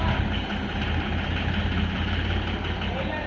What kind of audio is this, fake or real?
real